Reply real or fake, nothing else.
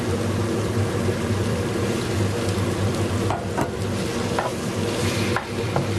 fake